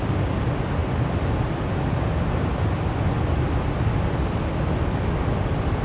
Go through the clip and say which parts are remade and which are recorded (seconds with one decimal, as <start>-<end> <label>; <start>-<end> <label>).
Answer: 0.0-5.8 recorded